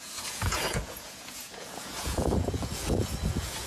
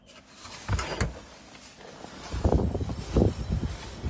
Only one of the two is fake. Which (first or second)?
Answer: first